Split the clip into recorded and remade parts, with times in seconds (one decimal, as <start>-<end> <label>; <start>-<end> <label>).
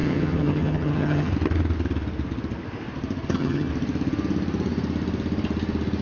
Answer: 0.0-1.3 remade; 1.3-3.3 recorded; 3.3-3.7 remade; 3.7-6.0 recorded